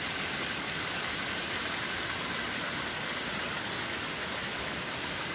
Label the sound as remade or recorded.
recorded